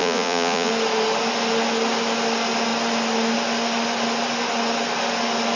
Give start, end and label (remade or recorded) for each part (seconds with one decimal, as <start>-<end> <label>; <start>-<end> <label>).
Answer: 0.0-0.7 remade; 0.7-5.6 recorded